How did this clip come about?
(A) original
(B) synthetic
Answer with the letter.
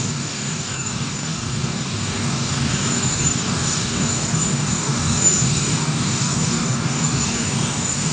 B